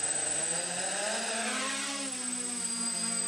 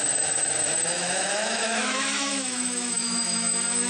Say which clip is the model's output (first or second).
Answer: second